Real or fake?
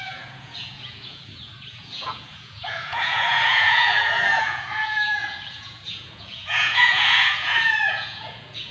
fake